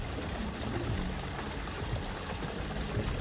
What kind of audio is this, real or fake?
real